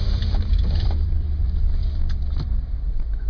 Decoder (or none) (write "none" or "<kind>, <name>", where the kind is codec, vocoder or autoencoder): vocoder, BigVGAN v2